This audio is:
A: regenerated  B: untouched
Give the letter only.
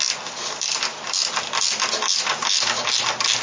B